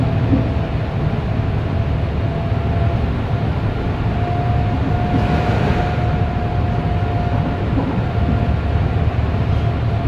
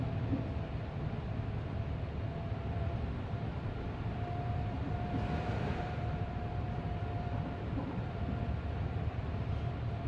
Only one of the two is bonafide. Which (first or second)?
first